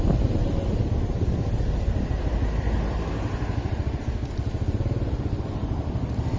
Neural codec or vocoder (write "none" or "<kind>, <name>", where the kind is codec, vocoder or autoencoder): none